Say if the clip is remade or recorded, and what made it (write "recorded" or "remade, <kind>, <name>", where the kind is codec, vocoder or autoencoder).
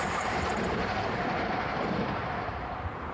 remade, vocoder, BigVGAN v2